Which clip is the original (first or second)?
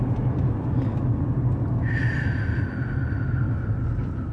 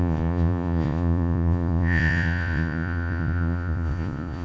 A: first